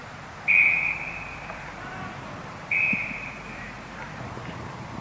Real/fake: fake